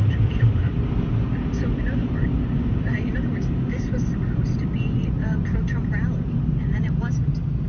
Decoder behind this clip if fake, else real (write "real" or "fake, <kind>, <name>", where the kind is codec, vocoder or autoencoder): real